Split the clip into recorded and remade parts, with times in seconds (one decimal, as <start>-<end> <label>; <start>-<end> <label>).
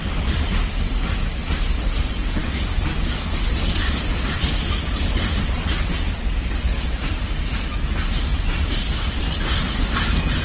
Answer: 0.0-10.4 recorded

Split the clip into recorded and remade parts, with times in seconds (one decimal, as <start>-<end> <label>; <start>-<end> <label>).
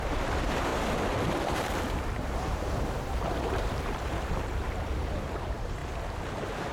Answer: 0.0-0.7 remade; 0.7-1.5 recorded; 1.5-5.8 remade; 5.8-6.7 recorded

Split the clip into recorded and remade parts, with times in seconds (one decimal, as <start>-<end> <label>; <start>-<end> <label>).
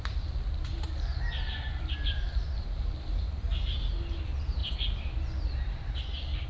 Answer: 0.0-6.5 recorded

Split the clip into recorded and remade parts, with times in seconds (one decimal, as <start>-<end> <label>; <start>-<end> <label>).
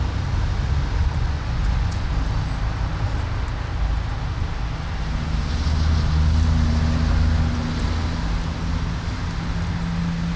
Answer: 0.0-1.0 recorded; 1.0-2.1 remade; 2.1-10.4 recorded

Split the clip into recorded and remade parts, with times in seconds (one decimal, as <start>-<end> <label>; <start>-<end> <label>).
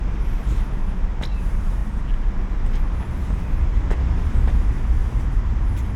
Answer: 0.0-0.8 remade; 0.8-1.4 recorded; 1.4-1.8 remade; 1.8-4.0 recorded; 4.0-5.0 remade; 5.0-6.0 recorded